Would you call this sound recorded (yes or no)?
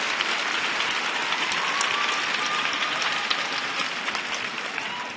yes